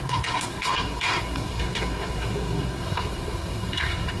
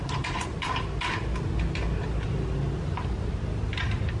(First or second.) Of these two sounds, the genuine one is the second